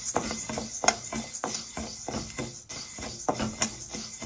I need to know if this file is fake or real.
real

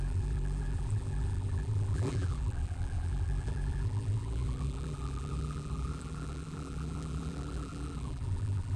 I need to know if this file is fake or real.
fake